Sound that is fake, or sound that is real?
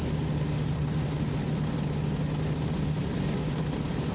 real